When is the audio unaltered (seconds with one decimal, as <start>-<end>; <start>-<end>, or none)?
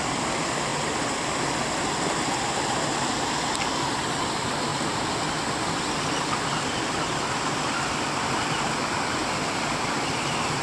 0.0-10.6